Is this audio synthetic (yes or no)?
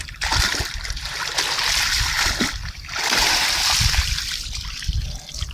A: no